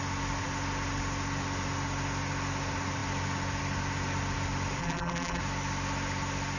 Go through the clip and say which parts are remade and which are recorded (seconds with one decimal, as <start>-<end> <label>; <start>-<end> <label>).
0.0-4.8 recorded; 4.8-5.4 remade; 5.4-6.6 recorded